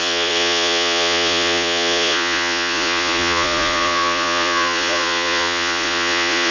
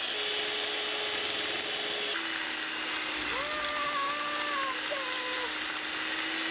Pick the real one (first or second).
second